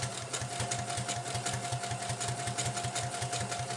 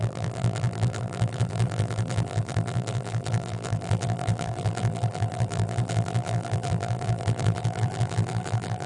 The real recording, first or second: first